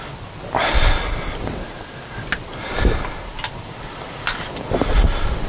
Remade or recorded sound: recorded